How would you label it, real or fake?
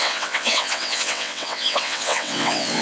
fake